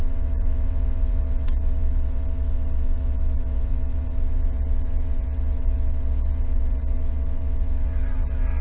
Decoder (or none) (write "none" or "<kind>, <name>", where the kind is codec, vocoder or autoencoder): vocoder, WaveNeXt